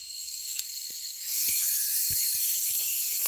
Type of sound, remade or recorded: remade